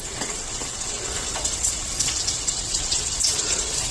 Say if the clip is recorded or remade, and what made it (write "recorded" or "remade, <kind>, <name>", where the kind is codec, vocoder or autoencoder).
remade, vocoder, WaveNeXt